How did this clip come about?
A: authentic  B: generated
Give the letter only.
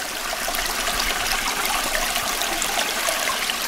B